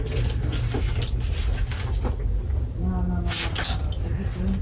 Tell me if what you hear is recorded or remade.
recorded